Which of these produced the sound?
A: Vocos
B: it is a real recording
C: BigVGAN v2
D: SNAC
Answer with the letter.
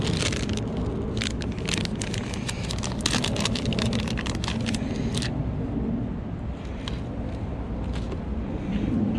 B